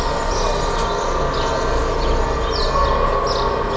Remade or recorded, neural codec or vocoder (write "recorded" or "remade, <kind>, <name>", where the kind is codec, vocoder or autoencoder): recorded